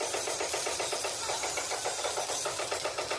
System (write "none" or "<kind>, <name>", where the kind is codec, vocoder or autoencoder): none